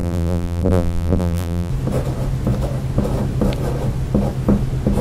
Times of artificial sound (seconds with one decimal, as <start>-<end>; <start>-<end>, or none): 0.0-1.7